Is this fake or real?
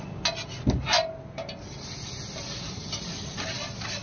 real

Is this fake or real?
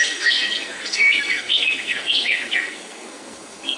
fake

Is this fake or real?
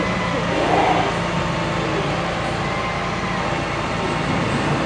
real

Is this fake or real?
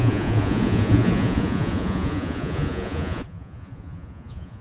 fake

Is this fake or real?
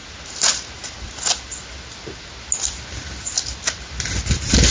real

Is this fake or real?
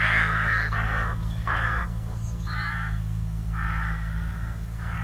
fake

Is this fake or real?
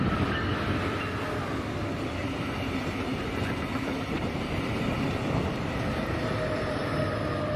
real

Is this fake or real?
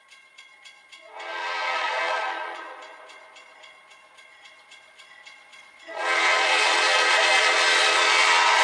fake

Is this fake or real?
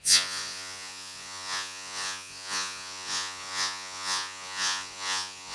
fake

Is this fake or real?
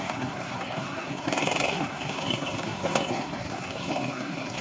fake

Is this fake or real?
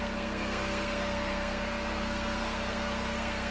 fake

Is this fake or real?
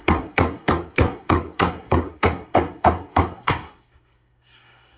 fake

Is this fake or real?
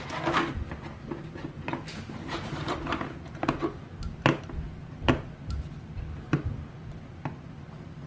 fake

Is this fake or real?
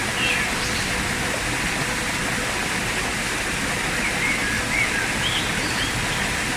real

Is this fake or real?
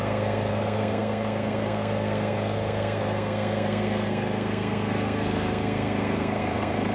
fake